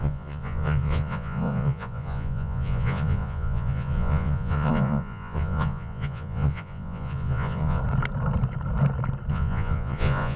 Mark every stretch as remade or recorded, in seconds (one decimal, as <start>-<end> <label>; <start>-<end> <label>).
0.0-7.8 remade; 7.8-9.3 recorded; 9.3-10.4 remade